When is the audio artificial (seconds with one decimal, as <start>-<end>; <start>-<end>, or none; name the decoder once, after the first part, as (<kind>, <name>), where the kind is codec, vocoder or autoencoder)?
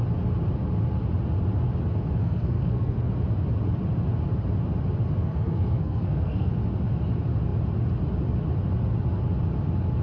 2.2-3.1 (codec, SNAC); 5.2-6.5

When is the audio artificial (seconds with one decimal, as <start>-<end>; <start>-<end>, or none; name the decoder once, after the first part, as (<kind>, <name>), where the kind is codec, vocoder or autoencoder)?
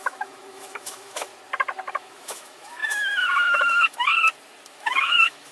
0.0-1.3 (autoencoder, DAC-VAE); 1.9-4.1; 4.7-5.5